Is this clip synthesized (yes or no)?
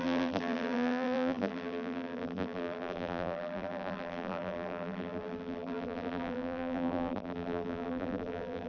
yes